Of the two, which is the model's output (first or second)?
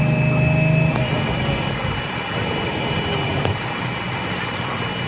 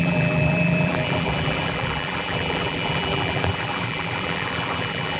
second